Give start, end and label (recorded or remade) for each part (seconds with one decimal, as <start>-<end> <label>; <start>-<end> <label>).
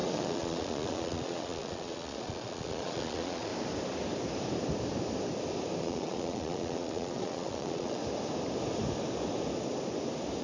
0.0-3.5 remade; 3.5-5.8 recorded; 5.8-8.0 remade; 8.0-10.4 recorded